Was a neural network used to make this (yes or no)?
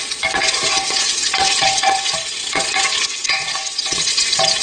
yes